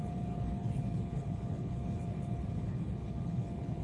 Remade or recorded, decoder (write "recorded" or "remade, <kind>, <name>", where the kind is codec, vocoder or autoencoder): remade, codec, HILCodec